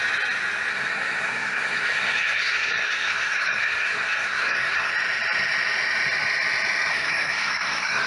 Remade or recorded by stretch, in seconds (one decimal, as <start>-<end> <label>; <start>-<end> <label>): 0.0-0.7 recorded; 0.7-4.9 remade; 4.9-6.9 recorded; 6.9-8.1 remade